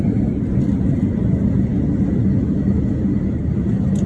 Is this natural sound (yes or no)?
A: yes